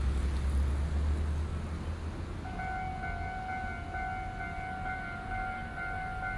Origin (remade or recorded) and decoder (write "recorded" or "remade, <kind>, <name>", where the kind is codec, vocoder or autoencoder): recorded